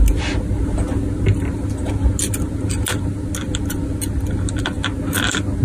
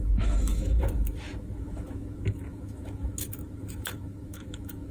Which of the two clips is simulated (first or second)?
second